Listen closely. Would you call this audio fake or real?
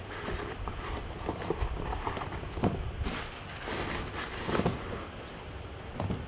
real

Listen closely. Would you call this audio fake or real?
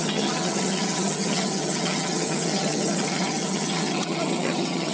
fake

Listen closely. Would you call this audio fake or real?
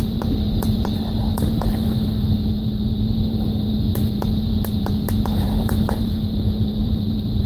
fake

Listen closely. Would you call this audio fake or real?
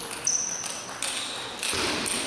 real